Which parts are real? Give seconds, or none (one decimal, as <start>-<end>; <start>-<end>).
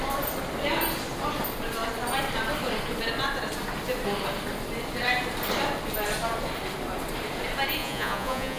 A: 0.0-7.8